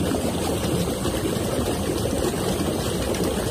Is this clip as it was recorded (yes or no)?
yes